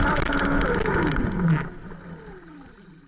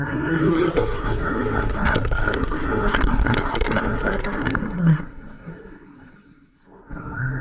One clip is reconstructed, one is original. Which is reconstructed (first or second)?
second